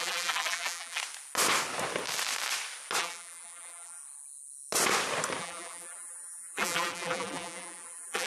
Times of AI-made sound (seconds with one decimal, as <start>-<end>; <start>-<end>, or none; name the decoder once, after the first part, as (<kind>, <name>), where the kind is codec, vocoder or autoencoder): 0.0-1.0 (vocoder, BigVGAN v2); 3.0-4.0; 5.4-8.3